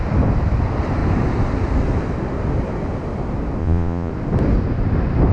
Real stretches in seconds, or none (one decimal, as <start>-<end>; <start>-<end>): 0.0-3.6; 4.1-5.3